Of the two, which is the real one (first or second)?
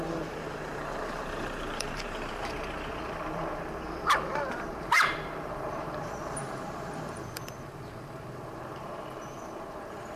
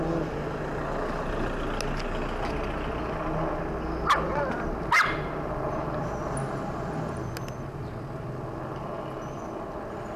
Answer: second